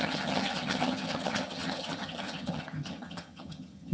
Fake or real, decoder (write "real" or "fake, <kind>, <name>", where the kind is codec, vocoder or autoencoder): fake, vocoder, HiFi-GAN